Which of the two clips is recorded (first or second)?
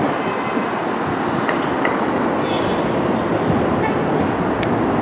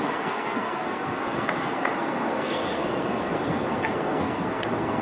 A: first